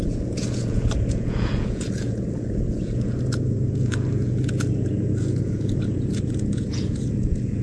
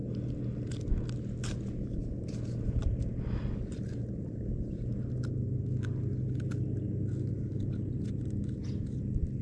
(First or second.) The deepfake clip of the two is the first